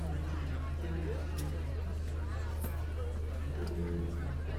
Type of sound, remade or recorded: recorded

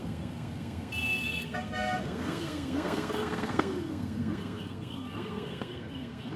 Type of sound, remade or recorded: remade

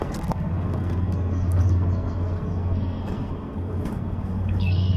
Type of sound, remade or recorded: remade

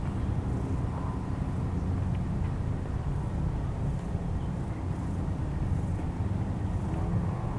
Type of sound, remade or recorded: recorded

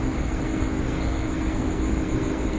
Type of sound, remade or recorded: remade